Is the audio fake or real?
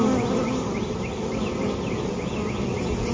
real